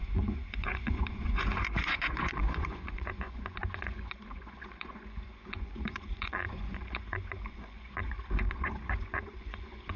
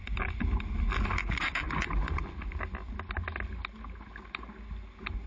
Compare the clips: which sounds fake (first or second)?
first